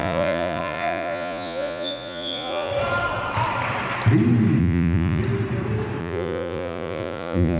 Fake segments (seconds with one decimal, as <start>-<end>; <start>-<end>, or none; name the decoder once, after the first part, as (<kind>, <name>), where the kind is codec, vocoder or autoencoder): 0.0-2.7 (vocoder, Vocos); 4.6-5.2; 6.0-7.6